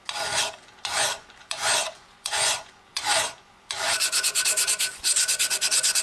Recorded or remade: remade